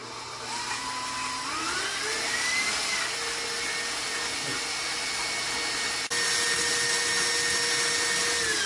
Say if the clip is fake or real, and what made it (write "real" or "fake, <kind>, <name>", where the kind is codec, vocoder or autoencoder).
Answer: real